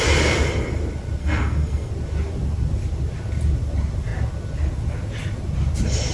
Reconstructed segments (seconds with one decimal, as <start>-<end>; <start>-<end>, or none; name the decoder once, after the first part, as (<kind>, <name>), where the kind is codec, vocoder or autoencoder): 1.2-1.9 (codec, SNAC)